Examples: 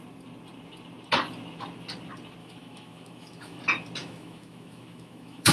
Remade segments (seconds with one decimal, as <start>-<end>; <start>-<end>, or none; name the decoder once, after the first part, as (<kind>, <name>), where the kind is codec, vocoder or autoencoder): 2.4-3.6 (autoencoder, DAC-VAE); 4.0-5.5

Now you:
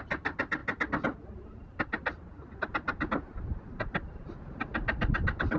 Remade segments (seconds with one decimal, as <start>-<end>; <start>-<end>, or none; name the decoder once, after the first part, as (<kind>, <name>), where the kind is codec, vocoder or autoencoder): none

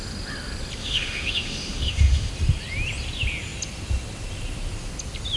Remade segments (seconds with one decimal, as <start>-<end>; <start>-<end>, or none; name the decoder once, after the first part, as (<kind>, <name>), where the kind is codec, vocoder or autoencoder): 0.8-2.3 (autoencoder, DAC-VAE)

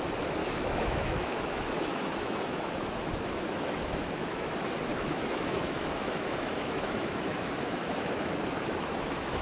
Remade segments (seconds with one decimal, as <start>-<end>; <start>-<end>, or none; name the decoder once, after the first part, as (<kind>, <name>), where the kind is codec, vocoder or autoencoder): 0.4-4.5 (autoencoder, DAC-VAE); 4.9-9.4